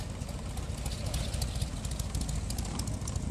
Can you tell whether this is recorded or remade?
recorded